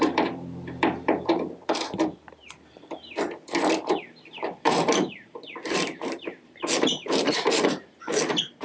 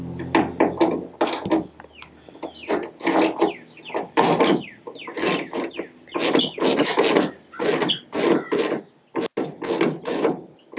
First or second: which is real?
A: second